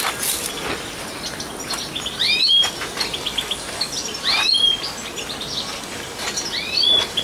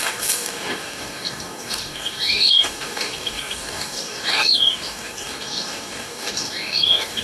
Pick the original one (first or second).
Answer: first